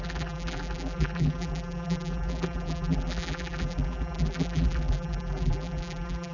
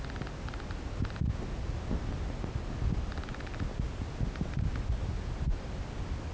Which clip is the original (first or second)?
second